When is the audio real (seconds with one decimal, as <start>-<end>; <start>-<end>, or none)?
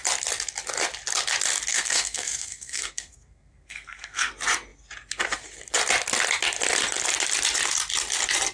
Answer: 0.0-1.7; 4.3-8.5